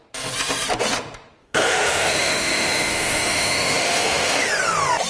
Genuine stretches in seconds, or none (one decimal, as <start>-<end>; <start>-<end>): 0.0-1.4; 4.5-5.1